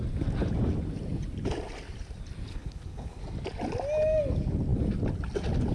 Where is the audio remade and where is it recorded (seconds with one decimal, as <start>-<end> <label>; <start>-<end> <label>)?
0.0-2.5 recorded; 2.5-3.2 remade; 3.2-5.7 recorded